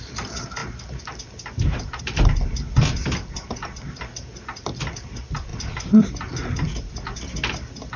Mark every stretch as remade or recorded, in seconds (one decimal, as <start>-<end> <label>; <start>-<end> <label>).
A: 0.0-8.0 recorded